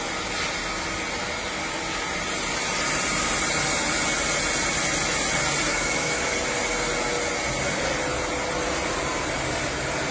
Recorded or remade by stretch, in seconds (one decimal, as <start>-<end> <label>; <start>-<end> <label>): 0.0-5.7 recorded; 5.7-6.2 remade; 6.2-10.1 recorded